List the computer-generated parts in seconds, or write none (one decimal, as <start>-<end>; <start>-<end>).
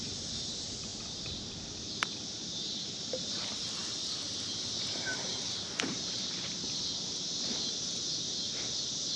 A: none